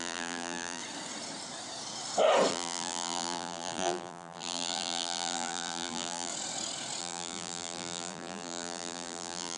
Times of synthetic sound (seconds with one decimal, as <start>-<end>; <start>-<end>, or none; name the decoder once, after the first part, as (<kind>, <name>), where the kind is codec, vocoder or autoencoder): 0.0-0.8 (vocoder, BigVGAN v2); 2.5-6.3; 7.0-9.6